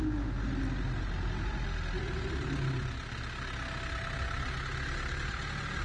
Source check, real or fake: real